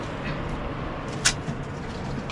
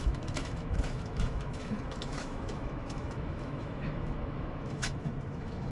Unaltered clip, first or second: first